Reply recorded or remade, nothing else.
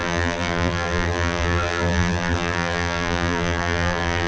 remade